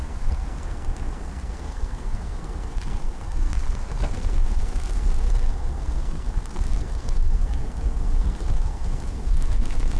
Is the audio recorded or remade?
remade